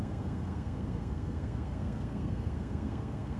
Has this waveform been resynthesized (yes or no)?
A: yes